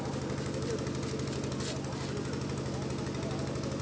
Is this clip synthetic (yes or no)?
no